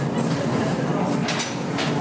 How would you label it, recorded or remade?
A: recorded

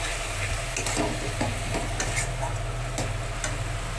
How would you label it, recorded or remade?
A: recorded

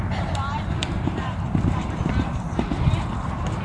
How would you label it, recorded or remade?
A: remade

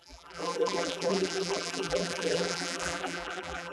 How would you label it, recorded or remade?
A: remade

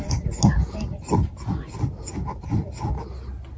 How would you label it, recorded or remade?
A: recorded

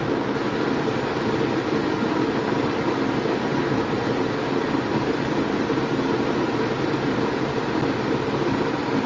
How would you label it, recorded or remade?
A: recorded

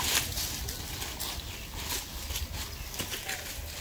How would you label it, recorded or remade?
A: recorded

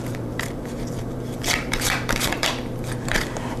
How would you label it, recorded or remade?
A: remade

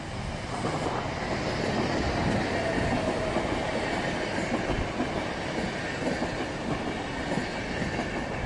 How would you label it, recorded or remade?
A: recorded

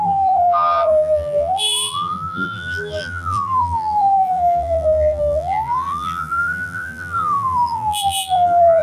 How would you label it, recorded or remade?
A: remade